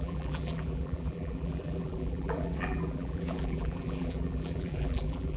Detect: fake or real fake